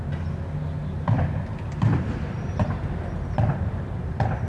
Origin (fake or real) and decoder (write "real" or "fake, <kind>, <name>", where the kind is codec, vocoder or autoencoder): real